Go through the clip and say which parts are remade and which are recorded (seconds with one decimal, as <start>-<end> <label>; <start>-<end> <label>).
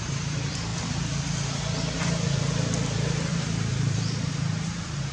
0.0-0.7 remade; 0.7-3.3 recorded; 3.3-5.1 remade